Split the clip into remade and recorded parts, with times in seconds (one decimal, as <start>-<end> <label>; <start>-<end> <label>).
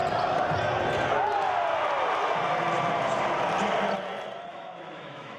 0.0-4.5 recorded; 4.5-5.4 remade